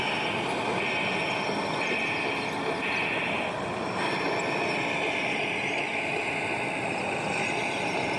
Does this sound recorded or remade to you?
recorded